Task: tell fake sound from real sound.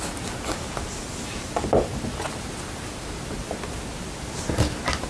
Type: real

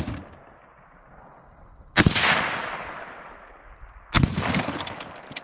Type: real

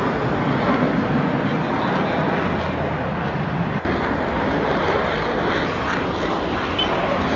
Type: real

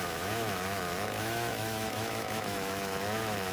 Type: fake